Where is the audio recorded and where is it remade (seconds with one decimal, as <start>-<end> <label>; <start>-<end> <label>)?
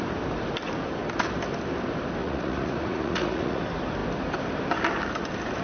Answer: 0.0-2.2 recorded; 2.2-3.6 remade; 3.6-5.6 recorded